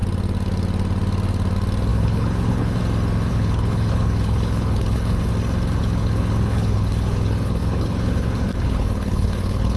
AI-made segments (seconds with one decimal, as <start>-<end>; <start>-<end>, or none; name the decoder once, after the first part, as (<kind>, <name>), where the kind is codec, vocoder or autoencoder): 1.9-2.8 (codec, HILCodec); 3.3-5.3; 5.8-9.8